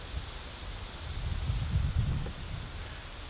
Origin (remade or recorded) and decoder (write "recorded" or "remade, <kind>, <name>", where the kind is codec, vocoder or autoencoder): recorded